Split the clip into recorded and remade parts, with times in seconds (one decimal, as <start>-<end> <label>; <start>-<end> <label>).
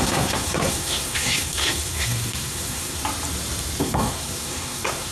0.0-3.0 remade; 3.0-3.8 recorded; 3.8-5.1 remade